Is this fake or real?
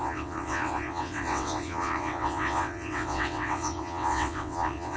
fake